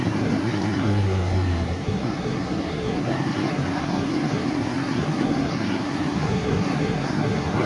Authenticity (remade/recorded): remade